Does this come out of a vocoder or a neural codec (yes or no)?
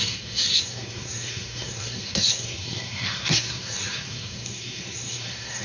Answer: yes